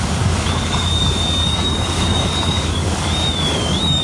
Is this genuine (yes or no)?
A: no